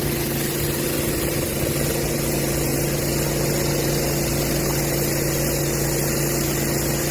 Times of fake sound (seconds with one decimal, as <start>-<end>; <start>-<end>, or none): none

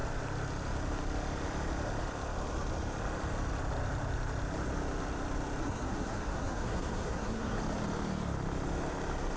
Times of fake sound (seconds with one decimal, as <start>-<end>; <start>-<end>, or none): 5.6-7.6

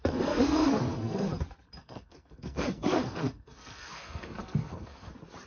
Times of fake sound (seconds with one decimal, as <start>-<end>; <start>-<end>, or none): 0.0-1.4; 1.8-5.1